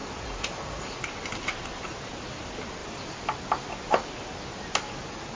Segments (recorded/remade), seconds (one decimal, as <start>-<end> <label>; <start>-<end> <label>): 0.0-1.0 remade; 1.0-5.3 recorded